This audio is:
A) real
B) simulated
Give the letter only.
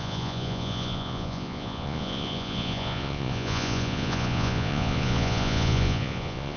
B